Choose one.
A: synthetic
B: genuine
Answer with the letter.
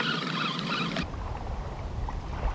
B